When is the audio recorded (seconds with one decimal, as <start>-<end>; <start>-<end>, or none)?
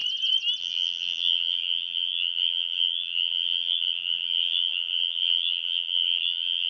0.0-0.6